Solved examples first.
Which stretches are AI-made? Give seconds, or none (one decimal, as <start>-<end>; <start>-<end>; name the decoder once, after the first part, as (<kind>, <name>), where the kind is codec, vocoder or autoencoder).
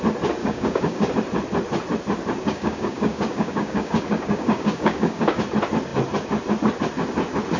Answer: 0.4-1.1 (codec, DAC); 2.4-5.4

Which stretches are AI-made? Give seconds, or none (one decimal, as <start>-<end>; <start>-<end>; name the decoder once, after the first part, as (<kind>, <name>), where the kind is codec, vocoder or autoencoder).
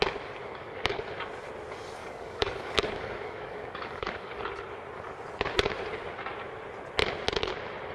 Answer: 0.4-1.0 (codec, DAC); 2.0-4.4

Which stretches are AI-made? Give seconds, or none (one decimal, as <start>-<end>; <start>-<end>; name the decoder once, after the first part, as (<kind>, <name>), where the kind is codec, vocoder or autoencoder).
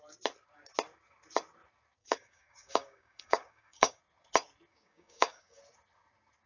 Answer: 2.0-4.0 (codec, DAC); 4.7-5.6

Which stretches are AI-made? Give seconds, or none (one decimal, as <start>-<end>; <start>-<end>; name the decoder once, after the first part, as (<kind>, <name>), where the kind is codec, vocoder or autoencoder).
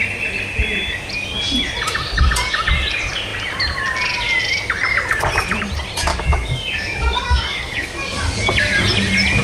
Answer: 6.1-8.5 (codec, DAC)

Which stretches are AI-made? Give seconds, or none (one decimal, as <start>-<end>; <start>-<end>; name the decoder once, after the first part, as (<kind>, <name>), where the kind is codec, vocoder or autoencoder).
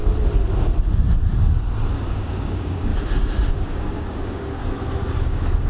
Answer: 2.1-2.9 (codec, DAC); 3.5-4.6; 5.2-5.7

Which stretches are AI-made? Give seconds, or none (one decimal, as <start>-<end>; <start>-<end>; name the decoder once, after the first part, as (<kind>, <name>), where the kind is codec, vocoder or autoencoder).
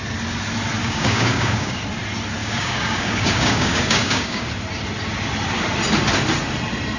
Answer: 0.8-1.8 (codec, DAC); 2.4-4.5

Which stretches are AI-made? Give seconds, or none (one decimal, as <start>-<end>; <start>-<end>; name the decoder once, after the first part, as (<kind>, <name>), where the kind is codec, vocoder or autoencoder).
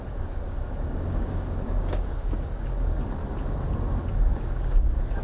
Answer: 0.0-3.2 (codec, DAC); 4.1-5.2